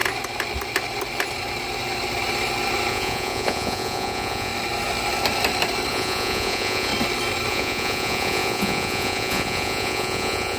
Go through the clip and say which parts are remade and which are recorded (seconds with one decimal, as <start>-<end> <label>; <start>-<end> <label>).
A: 0.0-2.9 recorded; 2.9-4.5 remade; 4.5-5.9 recorded; 5.9-6.9 remade; 6.9-7.5 recorded; 7.5-10.6 remade